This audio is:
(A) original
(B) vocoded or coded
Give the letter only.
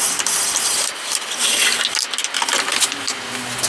A